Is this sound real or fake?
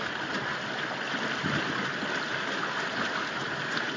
real